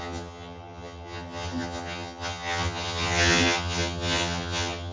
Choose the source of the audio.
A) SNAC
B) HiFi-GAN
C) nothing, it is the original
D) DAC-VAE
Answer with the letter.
B